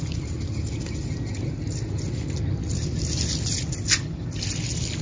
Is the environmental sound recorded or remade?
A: recorded